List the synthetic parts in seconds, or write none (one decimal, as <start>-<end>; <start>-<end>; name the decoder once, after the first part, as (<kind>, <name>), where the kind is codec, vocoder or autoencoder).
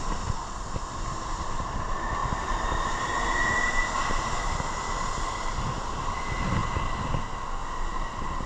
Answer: none